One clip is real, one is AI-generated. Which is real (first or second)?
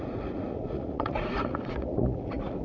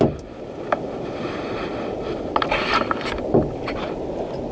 second